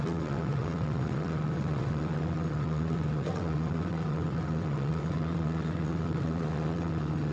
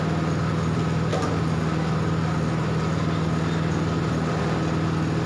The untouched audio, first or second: second